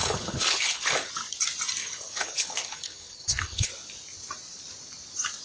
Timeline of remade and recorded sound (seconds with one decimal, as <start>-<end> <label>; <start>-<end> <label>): 0.0-1.1 remade; 1.1-1.8 recorded; 1.8-3.7 remade; 3.7-5.4 recorded

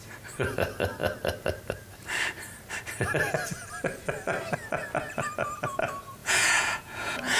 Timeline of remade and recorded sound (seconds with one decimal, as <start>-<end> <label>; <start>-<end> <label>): 0.0-6.2 recorded; 6.2-7.4 remade

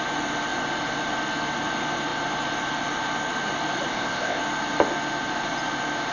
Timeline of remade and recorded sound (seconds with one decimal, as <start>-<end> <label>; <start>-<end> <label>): 0.0-3.9 recorded; 3.9-4.4 remade; 4.4-6.1 recorded